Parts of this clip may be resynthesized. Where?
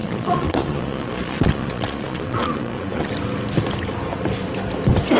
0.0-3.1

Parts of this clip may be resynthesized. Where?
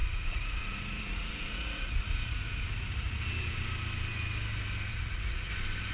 0.0-3.2; 4.9-5.5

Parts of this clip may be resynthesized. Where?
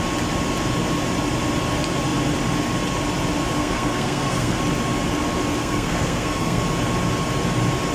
3.6-4.6; 5.6-6.6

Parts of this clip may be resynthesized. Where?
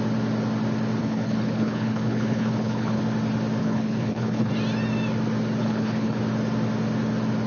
1.0-3.0; 3.6-4.5; 5.6-6.2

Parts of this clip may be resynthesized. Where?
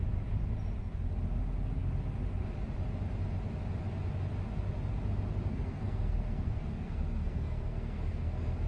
5.5-8.7